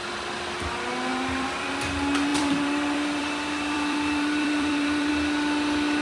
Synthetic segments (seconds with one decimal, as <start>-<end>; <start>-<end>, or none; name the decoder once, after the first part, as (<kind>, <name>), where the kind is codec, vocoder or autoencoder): 1.1-1.7 (vocoder, BigVGAN v2); 2.3-5.1